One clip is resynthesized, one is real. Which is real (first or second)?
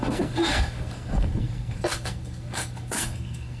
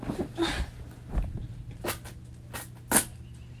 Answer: second